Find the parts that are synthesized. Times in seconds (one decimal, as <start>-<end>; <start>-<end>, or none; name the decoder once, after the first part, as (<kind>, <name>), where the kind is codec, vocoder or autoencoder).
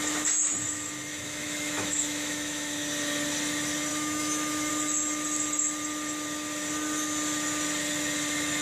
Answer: 1.1-2.7 (autoencoder, DAC-VAE); 3.9-4.7